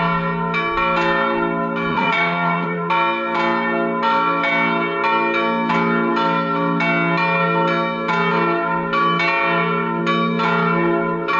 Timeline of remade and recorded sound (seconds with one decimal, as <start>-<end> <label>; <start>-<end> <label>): 0.0-1.9 recorded; 1.9-2.9 remade; 2.9-11.4 recorded